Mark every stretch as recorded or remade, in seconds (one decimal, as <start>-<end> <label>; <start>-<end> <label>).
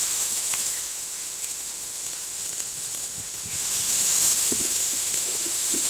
0.0-5.9 remade